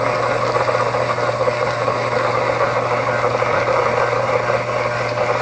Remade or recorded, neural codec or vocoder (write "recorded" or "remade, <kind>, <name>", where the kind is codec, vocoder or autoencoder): recorded